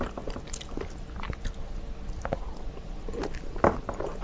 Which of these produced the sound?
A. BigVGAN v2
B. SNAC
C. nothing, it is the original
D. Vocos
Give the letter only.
C